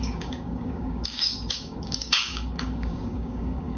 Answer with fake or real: fake